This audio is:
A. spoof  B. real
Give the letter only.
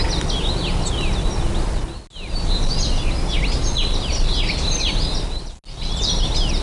B